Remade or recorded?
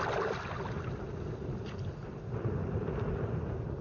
recorded